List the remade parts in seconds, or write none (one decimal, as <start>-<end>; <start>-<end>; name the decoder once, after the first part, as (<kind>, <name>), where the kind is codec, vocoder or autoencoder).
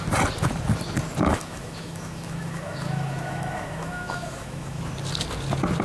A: 1.3-4.8 (autoencoder, DAC-VAE)